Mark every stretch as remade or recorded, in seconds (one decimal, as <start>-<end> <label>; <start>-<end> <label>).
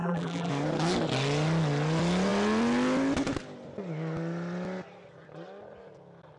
0.0-0.5 remade; 0.5-6.4 recorded